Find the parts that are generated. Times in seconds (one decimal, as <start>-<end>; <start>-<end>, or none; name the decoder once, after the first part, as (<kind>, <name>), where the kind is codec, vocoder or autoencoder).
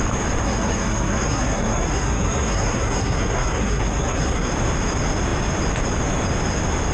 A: 0.4-4.5 (codec, SNAC)